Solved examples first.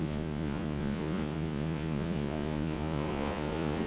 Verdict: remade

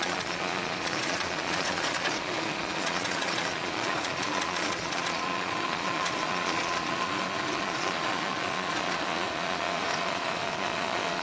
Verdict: remade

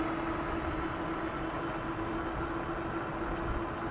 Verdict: recorded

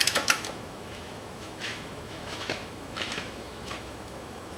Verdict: remade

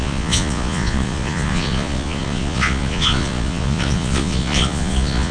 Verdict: remade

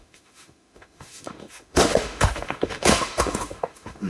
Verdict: remade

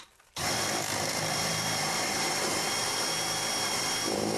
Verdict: remade